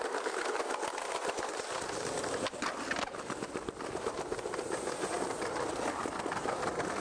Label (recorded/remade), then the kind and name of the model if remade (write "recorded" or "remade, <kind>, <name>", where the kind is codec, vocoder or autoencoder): recorded